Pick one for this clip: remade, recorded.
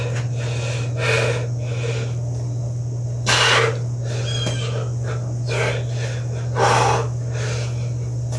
recorded